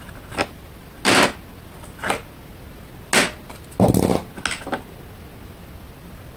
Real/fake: real